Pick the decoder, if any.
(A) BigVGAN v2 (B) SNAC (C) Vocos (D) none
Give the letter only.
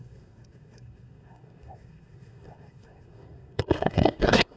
B